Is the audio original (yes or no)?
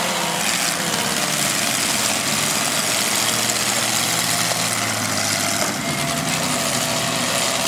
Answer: yes